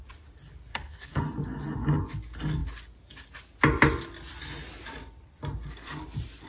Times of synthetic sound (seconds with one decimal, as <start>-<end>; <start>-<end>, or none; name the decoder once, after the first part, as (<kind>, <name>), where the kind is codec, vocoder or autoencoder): 0.7-1.2 (codec, SNAC)